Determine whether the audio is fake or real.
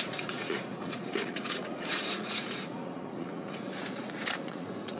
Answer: fake